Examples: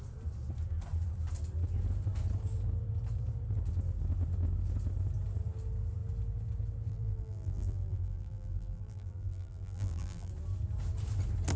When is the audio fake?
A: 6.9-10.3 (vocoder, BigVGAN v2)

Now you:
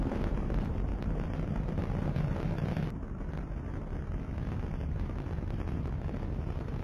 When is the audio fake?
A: 0.0-0.9 (vocoder, BigVGAN v2); 5.0-6.8

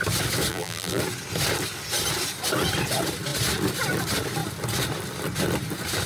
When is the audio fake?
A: 0.5-1.0 (vocoder, BigVGAN v2)

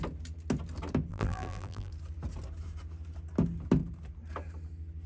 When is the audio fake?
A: 1.1-1.9 (vocoder, BigVGAN v2)

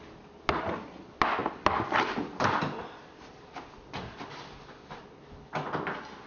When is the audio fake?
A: none

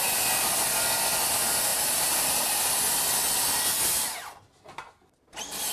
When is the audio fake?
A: 1.7-2.4 (vocoder, BigVGAN v2)

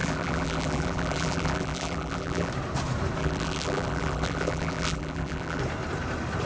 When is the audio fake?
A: 0.0-2.5 (vocoder, BigVGAN v2); 3.2-5.6

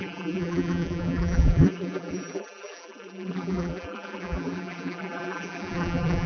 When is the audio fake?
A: 0.0-6.3 (vocoder, BigVGAN v2)